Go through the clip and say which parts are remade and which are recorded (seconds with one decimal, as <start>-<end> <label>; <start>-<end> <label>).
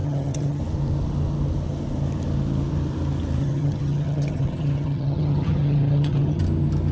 0.0-0.6 remade; 0.6-3.4 recorded; 3.4-6.4 remade; 6.4-6.9 recorded